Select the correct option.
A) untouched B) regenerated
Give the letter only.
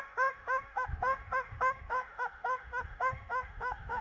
B